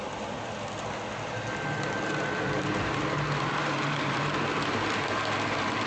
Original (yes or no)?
yes